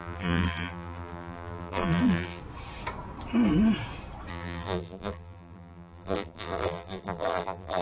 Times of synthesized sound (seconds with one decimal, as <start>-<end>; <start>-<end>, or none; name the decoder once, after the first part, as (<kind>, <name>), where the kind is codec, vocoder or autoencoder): 0.0-2.4 (vocoder, BigVGAN v2); 4.3-7.8